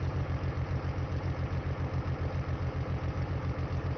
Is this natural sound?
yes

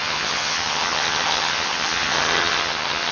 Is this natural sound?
no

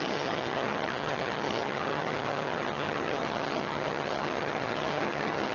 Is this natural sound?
no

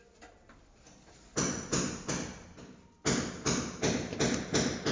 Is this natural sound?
yes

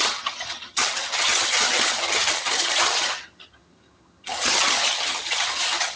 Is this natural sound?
no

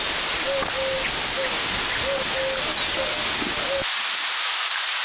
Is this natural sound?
yes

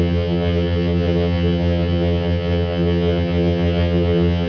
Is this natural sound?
no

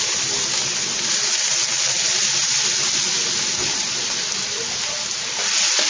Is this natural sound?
yes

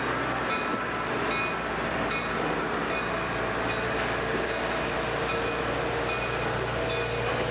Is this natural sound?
yes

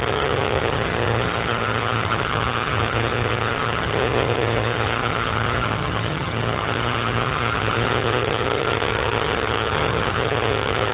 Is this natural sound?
no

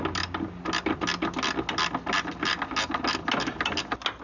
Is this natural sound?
yes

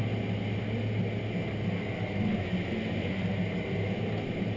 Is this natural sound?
yes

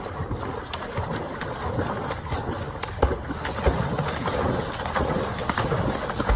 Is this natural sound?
yes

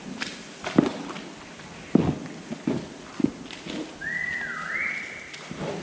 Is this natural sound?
yes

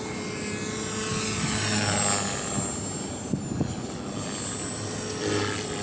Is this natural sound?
yes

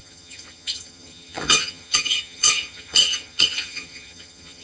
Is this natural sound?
no